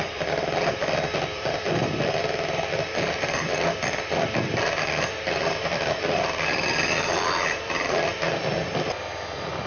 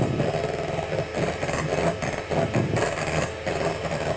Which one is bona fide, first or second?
second